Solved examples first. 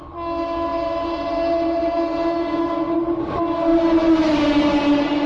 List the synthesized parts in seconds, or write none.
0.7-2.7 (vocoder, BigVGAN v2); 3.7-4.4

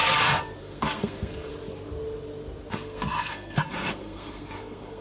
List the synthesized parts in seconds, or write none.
0.6-1.5 (codec, SNAC); 2.7-5.0

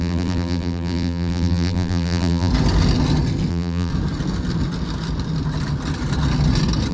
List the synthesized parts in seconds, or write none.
0.0-2.5 (vocoder, BigVGAN v2); 3.5-3.9